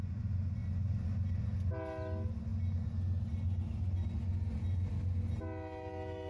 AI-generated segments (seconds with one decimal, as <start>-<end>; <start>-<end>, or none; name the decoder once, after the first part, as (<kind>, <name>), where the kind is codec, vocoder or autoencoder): none